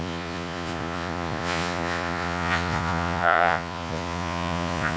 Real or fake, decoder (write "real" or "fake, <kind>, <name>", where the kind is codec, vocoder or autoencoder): fake, vocoder, Vocos